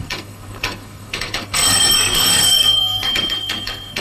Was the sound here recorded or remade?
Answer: remade